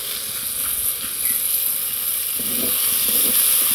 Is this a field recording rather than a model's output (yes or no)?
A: yes